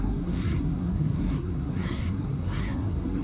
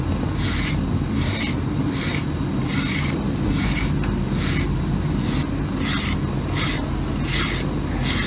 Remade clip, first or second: first